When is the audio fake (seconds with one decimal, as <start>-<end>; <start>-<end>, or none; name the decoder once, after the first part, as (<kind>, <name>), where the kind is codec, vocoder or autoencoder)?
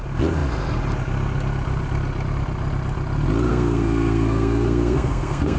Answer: 3.5-5.6 (codec, SNAC)